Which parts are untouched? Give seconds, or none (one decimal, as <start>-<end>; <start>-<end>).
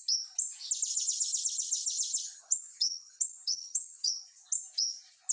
0.0-0.9; 4.1-5.3